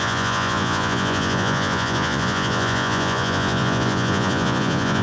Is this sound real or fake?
fake